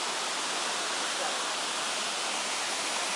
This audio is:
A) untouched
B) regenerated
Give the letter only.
A